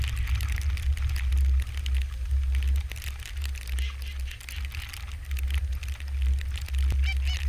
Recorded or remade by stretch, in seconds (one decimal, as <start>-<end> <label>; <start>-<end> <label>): 0.0-7.5 recorded